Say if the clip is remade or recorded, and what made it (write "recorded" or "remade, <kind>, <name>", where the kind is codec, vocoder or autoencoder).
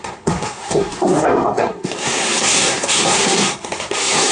remade, codec, SNAC